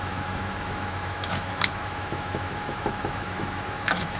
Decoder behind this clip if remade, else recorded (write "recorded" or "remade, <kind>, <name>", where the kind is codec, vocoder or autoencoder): remade, autoencoder, DAC-VAE